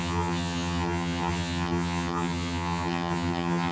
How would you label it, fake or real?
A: fake